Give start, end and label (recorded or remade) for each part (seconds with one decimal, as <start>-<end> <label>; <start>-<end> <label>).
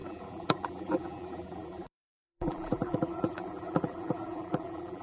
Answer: 0.0-5.0 remade